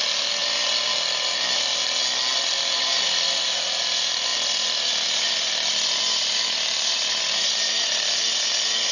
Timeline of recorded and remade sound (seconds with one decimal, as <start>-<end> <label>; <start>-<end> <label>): 0.0-8.9 recorded